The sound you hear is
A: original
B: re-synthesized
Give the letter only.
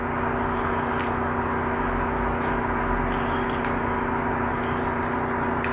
A